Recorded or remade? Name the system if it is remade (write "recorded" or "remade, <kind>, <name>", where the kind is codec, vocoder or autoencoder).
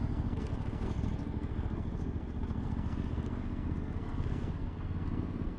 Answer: remade, codec, SNAC